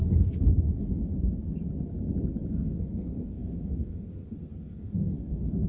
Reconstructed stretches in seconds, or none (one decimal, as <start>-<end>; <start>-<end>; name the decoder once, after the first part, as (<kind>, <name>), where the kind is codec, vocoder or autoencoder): 2.5-5.7 (codec, SNAC)